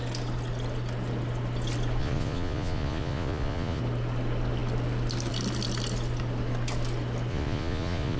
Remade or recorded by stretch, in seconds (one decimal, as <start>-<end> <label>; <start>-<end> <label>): 0.0-2.0 recorded; 2.0-3.8 remade; 3.8-7.3 recorded; 7.3-8.2 remade